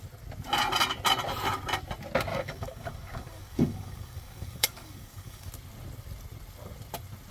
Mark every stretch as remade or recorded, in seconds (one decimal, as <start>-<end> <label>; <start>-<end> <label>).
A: 0.0-2.3 recorded; 2.3-5.5 remade; 5.5-7.3 recorded